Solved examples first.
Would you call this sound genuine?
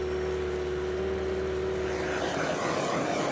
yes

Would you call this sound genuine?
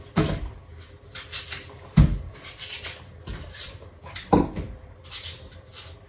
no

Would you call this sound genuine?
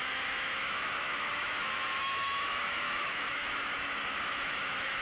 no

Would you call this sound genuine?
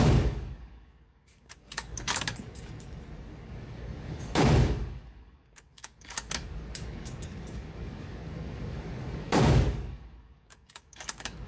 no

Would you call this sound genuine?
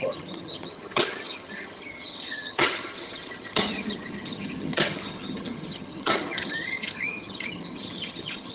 no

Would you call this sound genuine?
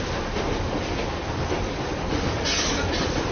yes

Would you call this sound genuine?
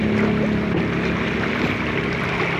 yes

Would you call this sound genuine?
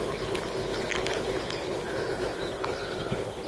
no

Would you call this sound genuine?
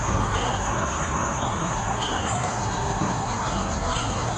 no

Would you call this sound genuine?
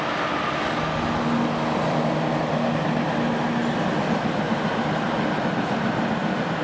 yes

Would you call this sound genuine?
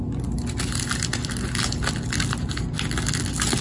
yes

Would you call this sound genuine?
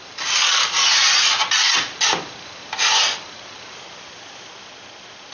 yes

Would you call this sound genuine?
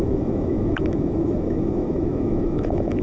no